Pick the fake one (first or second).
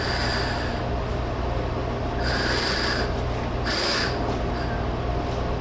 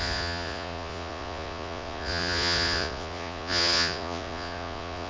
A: second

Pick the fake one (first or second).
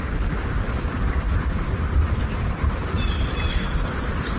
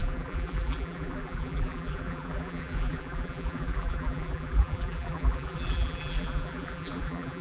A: second